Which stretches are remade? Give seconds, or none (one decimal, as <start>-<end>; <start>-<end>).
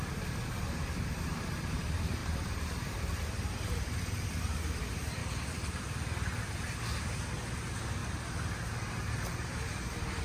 2.2-4.8; 5.2-5.8